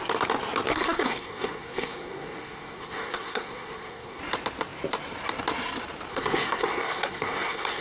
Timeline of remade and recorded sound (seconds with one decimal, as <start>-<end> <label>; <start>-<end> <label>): 0.0-0.7 recorded; 0.7-4.2 remade; 4.2-6.1 recorded; 6.1-7.8 remade